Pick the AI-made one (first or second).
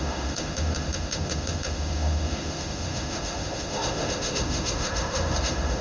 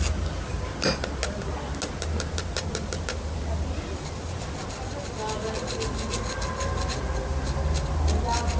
first